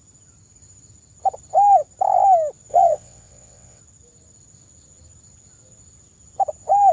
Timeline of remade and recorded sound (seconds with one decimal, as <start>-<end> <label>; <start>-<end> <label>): 0.0-2.7 recorded; 2.7-3.8 remade; 3.8-6.9 recorded